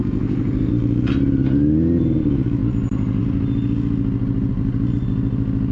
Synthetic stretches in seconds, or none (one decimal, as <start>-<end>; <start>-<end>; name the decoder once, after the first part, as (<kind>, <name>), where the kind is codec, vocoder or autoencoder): 0.0-0.7 (codec, SNAC)